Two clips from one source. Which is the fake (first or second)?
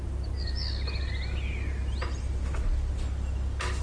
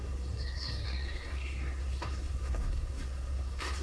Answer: second